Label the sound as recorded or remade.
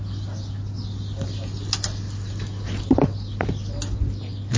recorded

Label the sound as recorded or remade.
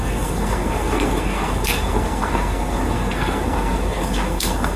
remade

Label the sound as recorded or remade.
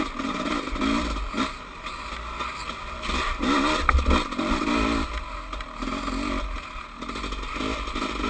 recorded